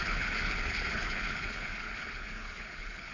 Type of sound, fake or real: fake